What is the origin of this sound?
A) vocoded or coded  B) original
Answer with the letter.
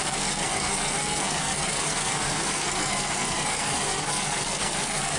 A